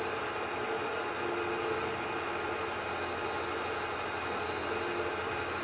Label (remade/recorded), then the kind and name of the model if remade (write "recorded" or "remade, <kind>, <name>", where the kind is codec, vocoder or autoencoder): recorded